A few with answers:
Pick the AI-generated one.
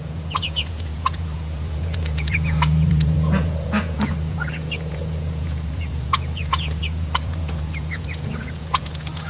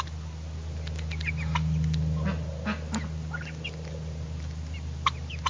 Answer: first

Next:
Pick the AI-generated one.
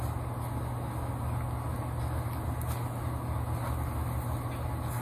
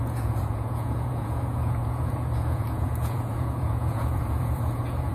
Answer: second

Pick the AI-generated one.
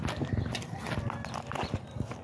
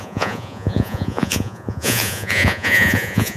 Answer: second